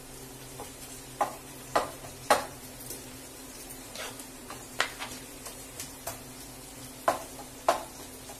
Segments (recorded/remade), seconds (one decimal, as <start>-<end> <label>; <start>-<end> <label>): 0.0-1.3 recorded; 1.3-6.3 remade; 6.3-8.4 recorded